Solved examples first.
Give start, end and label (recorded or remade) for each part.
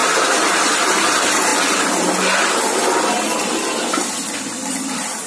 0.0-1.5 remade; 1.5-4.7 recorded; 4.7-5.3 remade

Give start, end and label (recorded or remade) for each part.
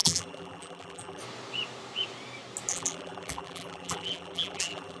0.0-1.2 remade; 1.2-2.7 recorded; 2.7-5.0 remade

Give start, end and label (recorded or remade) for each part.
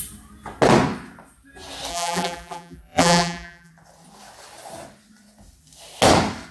0.0-1.9 recorded; 1.9-3.7 remade; 3.7-6.5 recorded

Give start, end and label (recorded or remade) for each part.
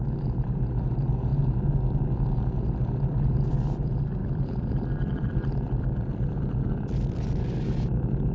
0.0-4.2 recorded; 4.2-7.4 remade; 7.4-8.3 recorded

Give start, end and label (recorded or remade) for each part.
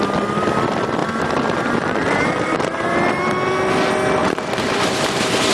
0.0-1.0 recorded; 1.0-2.9 remade; 2.9-4.2 recorded; 4.2-5.5 remade